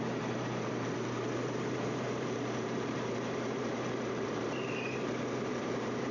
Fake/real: fake